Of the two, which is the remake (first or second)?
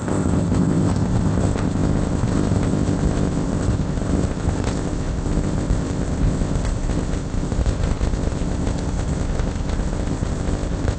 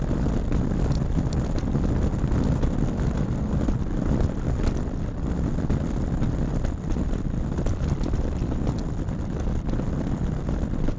first